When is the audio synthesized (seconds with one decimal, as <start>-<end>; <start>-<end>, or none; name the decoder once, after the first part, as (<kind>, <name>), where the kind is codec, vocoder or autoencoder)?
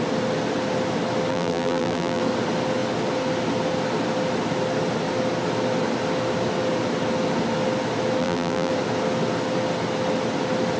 1.3-2.2 (vocoder, BigVGAN v2); 8.2-8.7